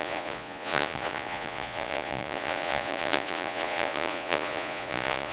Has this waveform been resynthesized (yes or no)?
yes